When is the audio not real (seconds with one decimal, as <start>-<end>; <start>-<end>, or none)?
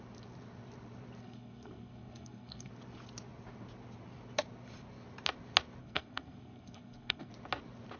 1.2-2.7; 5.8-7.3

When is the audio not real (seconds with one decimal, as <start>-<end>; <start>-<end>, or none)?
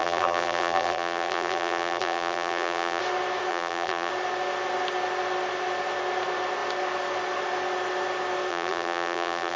0.0-3.0; 3.5-4.1; 8.5-9.6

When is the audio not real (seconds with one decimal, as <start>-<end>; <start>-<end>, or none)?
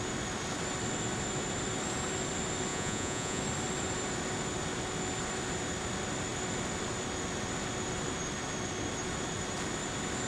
2.7-3.4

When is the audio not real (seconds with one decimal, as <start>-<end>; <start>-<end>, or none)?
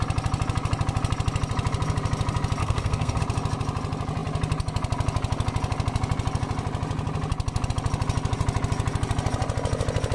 2.6-3.2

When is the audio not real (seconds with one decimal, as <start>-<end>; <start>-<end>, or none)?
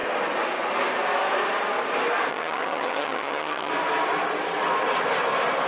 2.3-3.7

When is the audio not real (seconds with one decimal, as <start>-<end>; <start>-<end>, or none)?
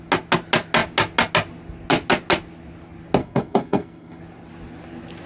3.2-4.2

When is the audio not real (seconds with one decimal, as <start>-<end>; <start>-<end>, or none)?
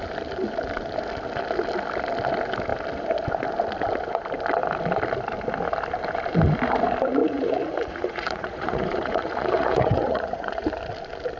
7.2-10.7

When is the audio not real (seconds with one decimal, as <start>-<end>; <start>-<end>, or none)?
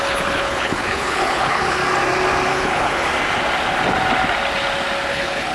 0.0-1.8; 2.5-3.1; 5.1-5.5